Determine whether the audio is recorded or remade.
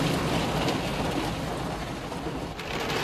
recorded